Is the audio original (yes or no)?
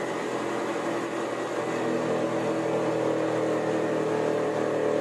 yes